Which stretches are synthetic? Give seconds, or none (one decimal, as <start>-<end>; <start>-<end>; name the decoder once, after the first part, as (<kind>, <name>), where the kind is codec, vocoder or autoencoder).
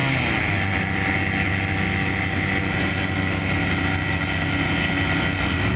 none